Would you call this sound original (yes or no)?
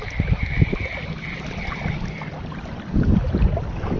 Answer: yes